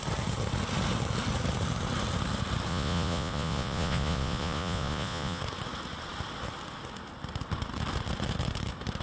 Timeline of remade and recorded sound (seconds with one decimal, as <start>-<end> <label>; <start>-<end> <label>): 0.0-2.7 recorded; 2.7-5.4 remade; 5.4-9.0 recorded